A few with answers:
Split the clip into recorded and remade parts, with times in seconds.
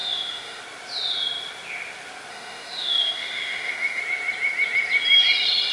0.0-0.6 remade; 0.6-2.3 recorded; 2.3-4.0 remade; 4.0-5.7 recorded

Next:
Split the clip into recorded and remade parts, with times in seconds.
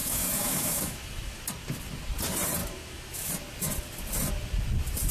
0.0-1.4 remade; 1.4-2.6 recorded; 2.6-3.3 remade; 3.3-5.1 recorded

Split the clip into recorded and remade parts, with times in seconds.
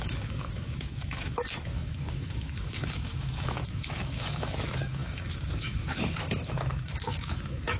0.0-7.8 remade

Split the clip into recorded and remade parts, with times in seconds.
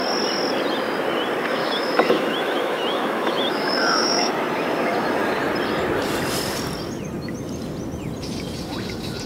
0.0-1.6 recorded; 1.6-4.3 remade; 4.3-9.3 recorded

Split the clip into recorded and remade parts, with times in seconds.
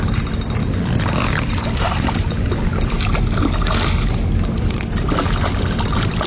0.0-6.3 recorded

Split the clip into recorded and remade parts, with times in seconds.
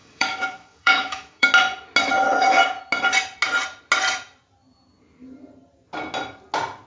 0.0-1.5 remade; 1.5-6.9 recorded